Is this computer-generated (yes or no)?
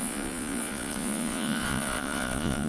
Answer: yes